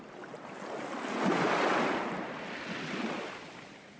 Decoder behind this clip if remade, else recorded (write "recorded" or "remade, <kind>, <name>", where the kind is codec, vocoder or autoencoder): recorded